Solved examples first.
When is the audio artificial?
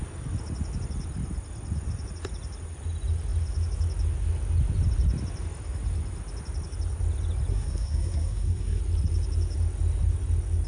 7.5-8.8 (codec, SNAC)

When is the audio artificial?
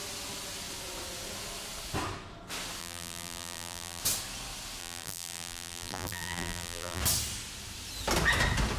2.8-4.0 (vocoder, BigVGAN v2); 4.8-7.0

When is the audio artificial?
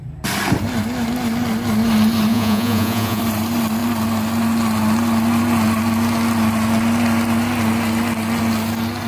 2.3-3.2 (vocoder, Vocos)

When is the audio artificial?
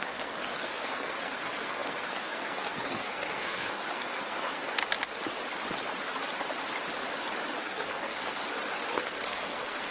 0.0-4.8 (codec, SNAC); 7.6-8.4; 8.9-9.9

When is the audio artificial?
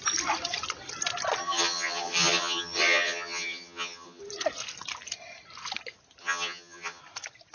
1.4-4.2 (vocoder, HiFi-GAN); 6.2-7.0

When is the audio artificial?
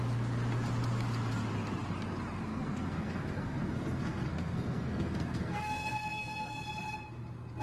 2.5-6.6 (codec, SNAC)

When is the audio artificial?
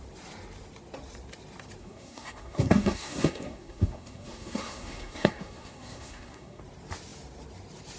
1.8-6.6 (codec, SNAC)